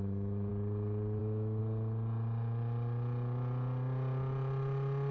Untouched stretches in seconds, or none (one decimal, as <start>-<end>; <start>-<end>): 0.5-1.2; 1.6-5.1